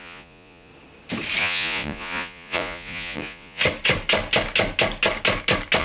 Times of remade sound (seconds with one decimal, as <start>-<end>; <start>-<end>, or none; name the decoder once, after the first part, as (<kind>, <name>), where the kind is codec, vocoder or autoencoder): 0.0-0.7 (vocoder, Vocos); 1.4-3.6